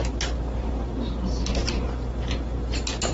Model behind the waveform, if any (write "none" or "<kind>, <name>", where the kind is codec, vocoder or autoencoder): none